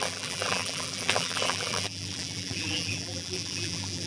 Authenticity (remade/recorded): remade